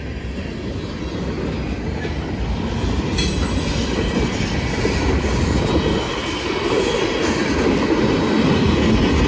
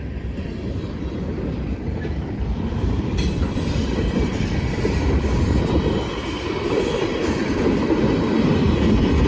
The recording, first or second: first